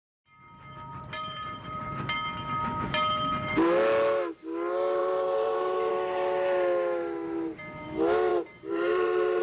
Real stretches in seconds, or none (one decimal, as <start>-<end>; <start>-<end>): 0.0-0.9; 1.8-5.0; 5.9-8.3